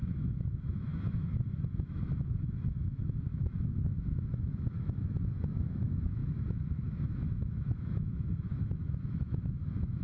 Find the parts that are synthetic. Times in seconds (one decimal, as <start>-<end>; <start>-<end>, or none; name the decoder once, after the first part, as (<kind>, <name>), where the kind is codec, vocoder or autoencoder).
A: 0.0-10.0 (autoencoder, DAC-VAE)